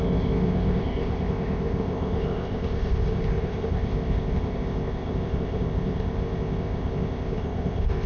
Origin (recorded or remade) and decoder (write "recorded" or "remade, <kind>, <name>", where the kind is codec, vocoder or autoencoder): remade, codec, ZipCodec